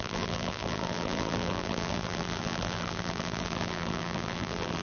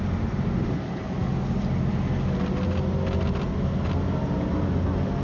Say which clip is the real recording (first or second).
second